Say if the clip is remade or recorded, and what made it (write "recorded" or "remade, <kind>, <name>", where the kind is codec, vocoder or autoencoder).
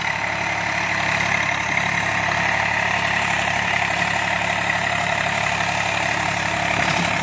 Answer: remade, vocoder, BigVGAN v2